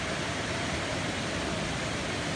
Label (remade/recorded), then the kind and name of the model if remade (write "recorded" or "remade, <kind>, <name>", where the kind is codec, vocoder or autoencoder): remade, vocoder, BigVGAN v2